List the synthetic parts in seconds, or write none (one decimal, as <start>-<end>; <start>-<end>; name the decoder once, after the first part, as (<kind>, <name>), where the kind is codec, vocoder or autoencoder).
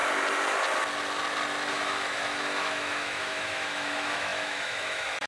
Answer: 1.7-5.3 (autoencoder, DAC-VAE)